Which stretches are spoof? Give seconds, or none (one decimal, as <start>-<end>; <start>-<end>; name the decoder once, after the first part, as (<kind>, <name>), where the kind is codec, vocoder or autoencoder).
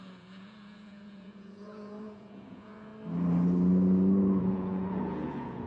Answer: 0.0-2.9 (vocoder, Vocos); 4.4-5.7